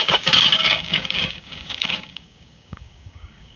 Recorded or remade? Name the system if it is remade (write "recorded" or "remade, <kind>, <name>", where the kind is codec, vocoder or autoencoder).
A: remade, codec, DAC